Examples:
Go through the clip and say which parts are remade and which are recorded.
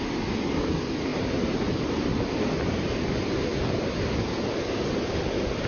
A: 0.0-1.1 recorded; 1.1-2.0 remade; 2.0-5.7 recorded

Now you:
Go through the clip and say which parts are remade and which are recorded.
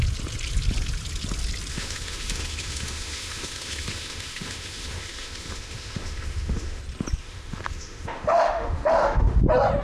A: 0.0-1.7 recorded; 1.7-6.8 remade; 6.8-7.2 recorded; 7.2-9.4 remade; 9.4-9.8 recorded